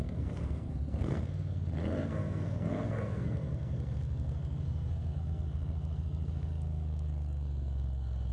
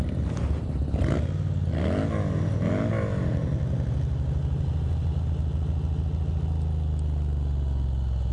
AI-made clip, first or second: first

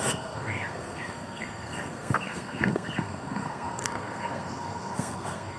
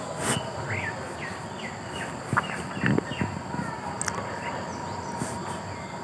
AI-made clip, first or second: first